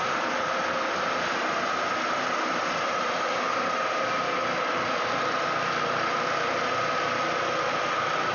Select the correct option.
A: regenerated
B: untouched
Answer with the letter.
B